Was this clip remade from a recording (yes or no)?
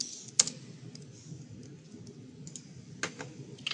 no